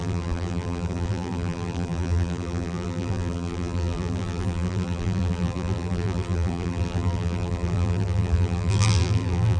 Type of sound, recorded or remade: remade